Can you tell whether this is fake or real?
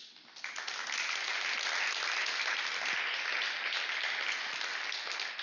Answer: real